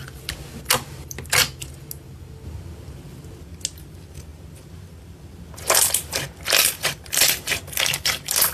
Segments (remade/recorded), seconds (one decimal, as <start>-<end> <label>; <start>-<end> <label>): 0.0-8.5 recorded